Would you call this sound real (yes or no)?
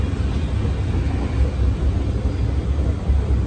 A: yes